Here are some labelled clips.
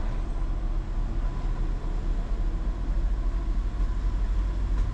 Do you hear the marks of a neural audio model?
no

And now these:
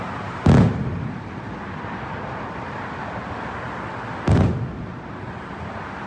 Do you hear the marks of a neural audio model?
no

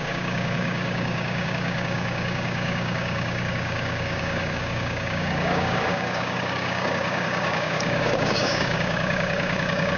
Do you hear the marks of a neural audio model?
yes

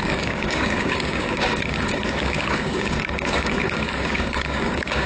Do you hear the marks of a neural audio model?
yes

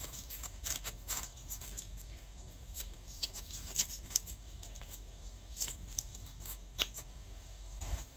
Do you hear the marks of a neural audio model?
yes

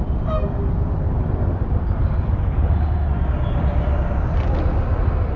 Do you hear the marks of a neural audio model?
no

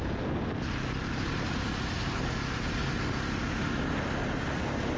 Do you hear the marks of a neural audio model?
no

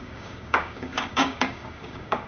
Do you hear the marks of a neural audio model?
yes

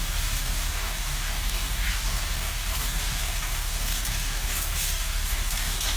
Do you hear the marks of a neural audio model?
yes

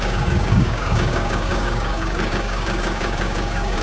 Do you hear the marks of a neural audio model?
yes